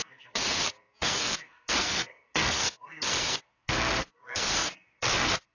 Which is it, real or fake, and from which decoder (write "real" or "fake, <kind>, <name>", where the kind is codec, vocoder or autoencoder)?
fake, codec, SNAC